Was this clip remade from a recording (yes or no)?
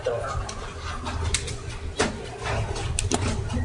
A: no